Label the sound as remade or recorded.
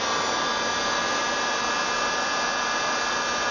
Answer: recorded